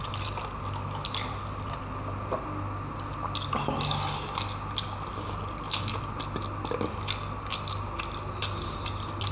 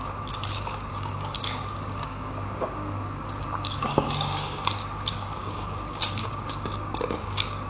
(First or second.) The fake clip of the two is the second